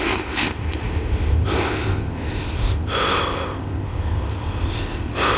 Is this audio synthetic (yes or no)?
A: yes